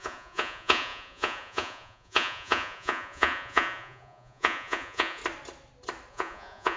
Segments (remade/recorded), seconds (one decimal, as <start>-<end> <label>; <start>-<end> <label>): 0.0-5.2 remade; 5.2-6.1 recorded; 6.1-6.8 remade